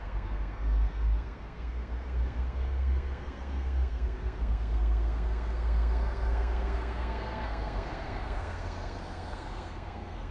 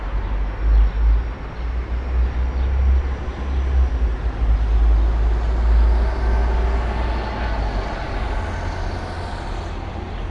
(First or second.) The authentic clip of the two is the second